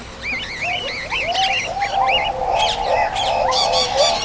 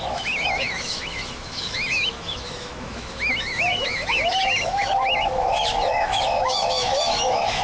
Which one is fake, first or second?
second